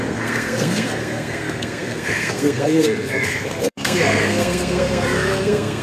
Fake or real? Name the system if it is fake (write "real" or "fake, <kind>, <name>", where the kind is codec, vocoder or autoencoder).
fake, codec, SNAC